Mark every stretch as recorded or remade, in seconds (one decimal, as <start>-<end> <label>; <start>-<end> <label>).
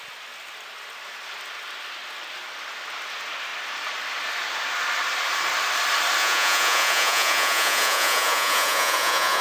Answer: 0.0-6.2 recorded; 6.2-9.4 remade